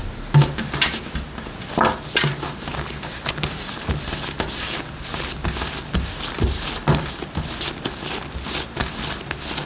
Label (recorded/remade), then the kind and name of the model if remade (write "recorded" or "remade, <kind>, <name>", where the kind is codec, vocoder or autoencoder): recorded